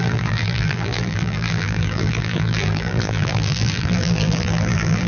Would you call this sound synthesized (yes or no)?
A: yes